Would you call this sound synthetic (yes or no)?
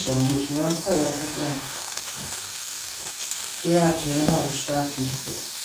yes